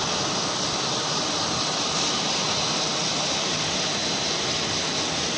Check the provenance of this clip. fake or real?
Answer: real